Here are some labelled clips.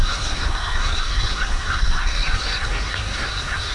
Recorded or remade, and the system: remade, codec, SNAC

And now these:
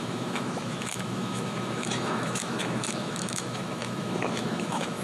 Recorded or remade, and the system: remade, autoencoder, DAC-VAE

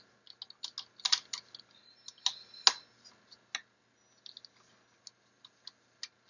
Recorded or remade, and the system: recorded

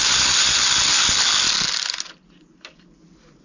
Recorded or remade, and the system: recorded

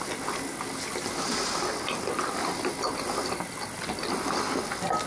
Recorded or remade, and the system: recorded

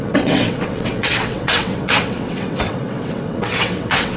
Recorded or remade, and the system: remade, vocoder, WaveNeXt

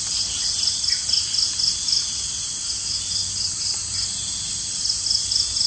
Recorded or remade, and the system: recorded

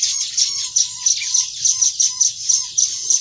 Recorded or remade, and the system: recorded